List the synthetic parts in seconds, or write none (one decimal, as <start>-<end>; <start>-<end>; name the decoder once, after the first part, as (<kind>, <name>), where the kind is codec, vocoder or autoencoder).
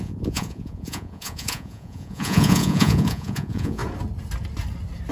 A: 0.0-3.8 (vocoder, Vocos)